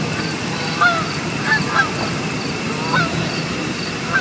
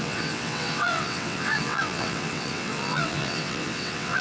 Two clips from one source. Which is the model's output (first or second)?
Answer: second